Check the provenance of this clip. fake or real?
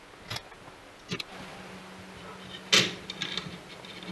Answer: real